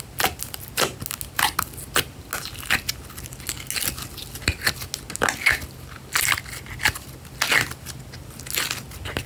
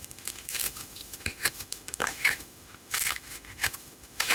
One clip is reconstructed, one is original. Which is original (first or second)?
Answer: first